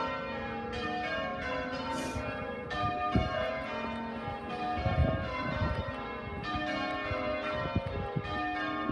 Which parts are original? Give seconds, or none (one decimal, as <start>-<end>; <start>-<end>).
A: 0.0-1.3; 3.5-5.0; 5.9-8.9